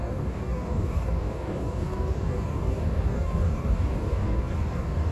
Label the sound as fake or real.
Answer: fake